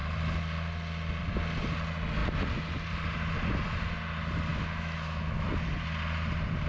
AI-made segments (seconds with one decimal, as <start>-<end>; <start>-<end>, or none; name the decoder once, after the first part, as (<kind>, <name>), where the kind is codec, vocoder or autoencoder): 4.5-5.5 (autoencoder, DAC-VAE)

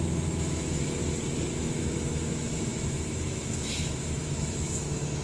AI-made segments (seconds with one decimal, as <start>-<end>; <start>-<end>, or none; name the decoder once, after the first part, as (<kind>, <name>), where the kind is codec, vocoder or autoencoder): 0.0-1.0 (autoencoder, DAC-VAE); 1.5-5.2